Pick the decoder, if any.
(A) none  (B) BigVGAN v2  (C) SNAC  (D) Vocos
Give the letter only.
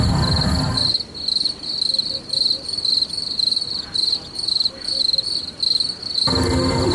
A